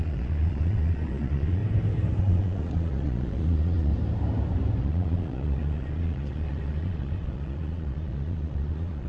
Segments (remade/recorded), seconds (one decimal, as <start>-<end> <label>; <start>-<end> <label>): 0.0-1.6 remade; 1.6-2.2 recorded; 2.2-3.9 remade; 3.9-4.8 recorded; 4.8-9.1 remade